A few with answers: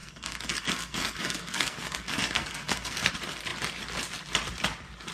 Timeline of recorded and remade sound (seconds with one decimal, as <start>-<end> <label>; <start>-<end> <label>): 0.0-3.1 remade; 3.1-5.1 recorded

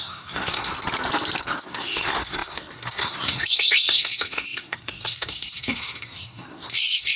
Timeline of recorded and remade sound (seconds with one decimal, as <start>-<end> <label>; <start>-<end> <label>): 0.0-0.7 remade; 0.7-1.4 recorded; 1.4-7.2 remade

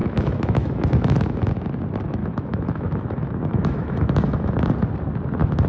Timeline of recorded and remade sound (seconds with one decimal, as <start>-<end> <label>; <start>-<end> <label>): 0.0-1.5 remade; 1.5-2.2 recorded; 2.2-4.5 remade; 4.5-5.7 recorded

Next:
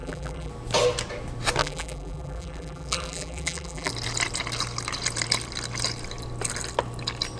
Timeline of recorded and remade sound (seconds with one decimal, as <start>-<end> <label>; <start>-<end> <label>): 0.0-0.5 remade; 0.5-1.6 recorded; 1.6-3.9 remade; 3.9-7.4 recorded

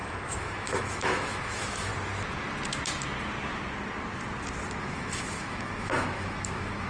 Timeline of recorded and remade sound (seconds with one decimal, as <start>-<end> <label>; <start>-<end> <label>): 0.0-1.9 remade; 1.9-4.8 recorded; 4.8-6.9 remade

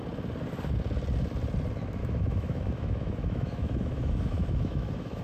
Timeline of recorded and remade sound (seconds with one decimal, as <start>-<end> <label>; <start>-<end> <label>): 0.0-2.0 recorded; 2.0-5.2 remade